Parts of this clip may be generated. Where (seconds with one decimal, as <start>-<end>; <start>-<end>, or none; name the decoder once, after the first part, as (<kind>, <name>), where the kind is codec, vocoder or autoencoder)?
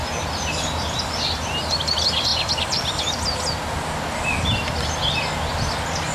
none